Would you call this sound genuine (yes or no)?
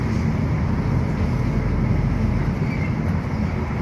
yes